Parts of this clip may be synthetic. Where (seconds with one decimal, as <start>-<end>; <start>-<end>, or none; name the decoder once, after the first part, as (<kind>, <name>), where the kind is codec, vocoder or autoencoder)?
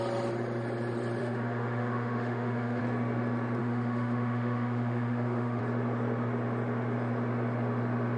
1.2-2.8 (autoencoder, DAC-VAE); 3.6-5.6